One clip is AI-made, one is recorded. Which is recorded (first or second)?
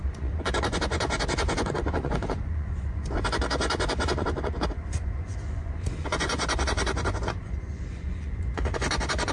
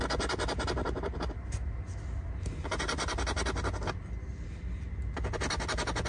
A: second